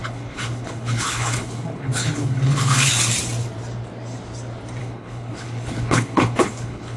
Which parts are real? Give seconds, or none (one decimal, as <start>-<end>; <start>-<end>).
2.9-4.8